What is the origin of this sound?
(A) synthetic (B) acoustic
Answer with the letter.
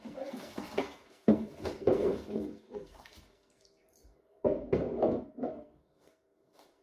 A